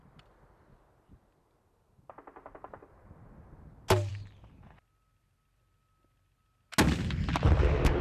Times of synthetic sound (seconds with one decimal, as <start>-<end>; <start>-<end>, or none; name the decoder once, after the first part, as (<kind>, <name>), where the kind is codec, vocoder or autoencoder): none